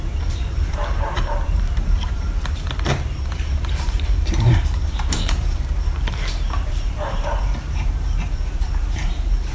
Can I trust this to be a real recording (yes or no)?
no